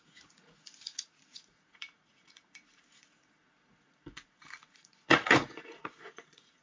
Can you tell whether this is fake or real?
fake